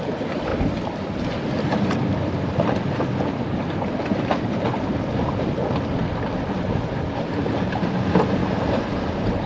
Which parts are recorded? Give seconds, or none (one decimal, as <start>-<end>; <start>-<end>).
0.5-3.7; 5.6-7.5; 8.4-9.1